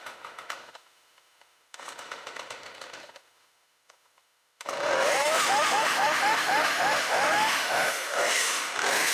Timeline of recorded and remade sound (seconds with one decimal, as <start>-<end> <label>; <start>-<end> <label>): 0.0-9.1 remade